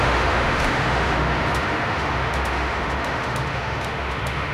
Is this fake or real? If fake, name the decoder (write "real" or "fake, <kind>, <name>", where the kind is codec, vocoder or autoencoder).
fake, autoencoder, DAC-VAE